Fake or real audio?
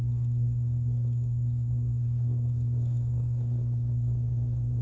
fake